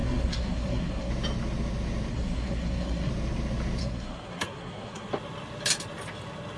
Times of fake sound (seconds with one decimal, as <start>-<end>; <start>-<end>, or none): 0.0-1.1; 2.1-3.1; 3.8-5.1